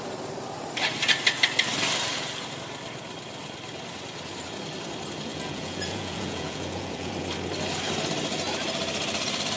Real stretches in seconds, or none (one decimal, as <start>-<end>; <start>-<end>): 0.0-5.3; 7.1-9.6